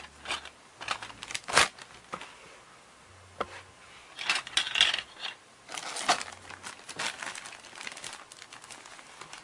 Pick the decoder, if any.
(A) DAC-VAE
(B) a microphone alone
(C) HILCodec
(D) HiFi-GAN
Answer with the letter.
B